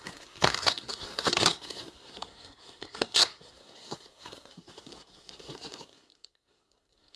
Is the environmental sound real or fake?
fake